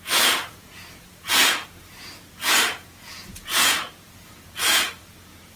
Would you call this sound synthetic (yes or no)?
yes